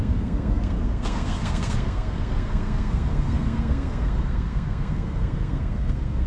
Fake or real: fake